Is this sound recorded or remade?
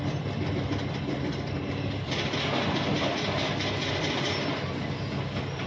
recorded